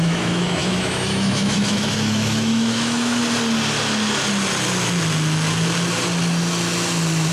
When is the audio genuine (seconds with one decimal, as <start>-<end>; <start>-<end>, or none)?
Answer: 3.2-7.3